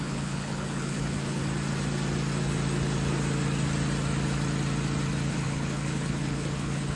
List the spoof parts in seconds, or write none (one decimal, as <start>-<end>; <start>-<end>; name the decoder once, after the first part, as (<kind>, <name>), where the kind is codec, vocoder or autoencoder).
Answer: 0.0-1.4 (codec, HILCodec); 5.3-7.0